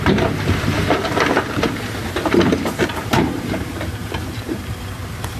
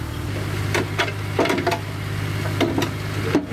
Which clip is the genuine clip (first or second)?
second